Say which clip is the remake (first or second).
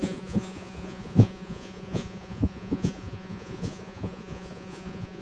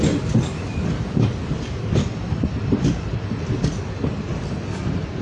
first